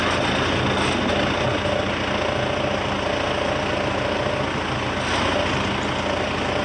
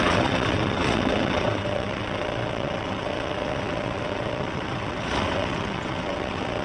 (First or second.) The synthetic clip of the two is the second